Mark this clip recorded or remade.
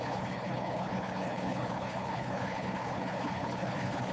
remade